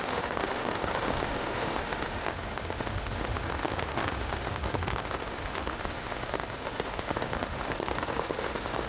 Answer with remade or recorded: remade